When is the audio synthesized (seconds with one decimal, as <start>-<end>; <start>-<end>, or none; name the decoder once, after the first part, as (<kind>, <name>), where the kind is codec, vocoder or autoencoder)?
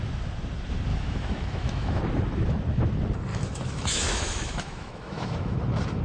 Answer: 0.9-2.0 (autoencoder, DAC-VAE); 3.3-5.6